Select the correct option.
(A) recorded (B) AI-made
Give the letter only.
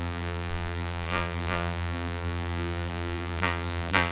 B